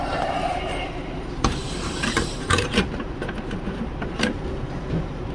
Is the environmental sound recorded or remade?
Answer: remade